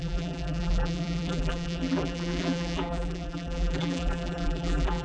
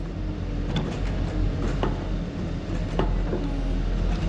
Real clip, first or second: second